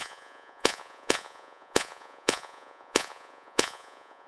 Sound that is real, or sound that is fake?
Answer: fake